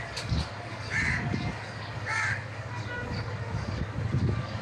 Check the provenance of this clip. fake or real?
fake